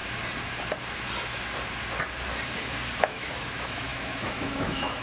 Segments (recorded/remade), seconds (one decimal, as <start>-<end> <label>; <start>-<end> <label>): 0.0-3.0 recorded; 3.0-5.0 remade